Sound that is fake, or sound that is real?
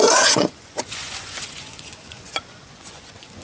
fake